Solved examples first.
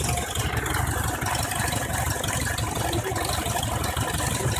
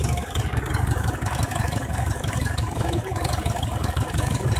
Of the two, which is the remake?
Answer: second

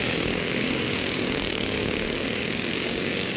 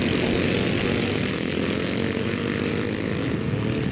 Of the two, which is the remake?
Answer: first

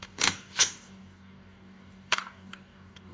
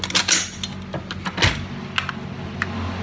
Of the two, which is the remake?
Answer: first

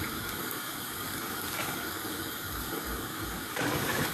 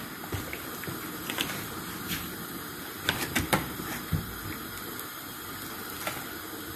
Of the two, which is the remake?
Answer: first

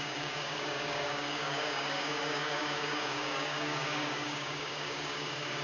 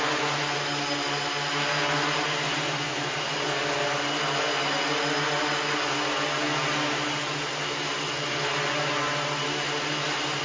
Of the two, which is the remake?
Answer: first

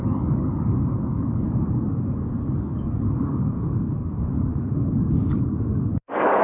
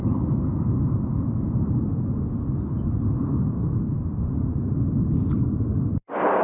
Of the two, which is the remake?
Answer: first